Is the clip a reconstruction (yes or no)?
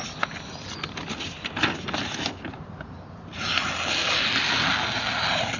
no